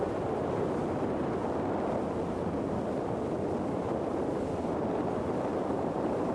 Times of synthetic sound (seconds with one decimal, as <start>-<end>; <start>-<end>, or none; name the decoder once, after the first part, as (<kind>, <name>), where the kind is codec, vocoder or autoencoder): 0.0-1.4 (vocoder, BigVGAN v2); 3.7-4.3; 5.7-6.3